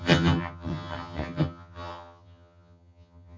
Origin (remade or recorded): remade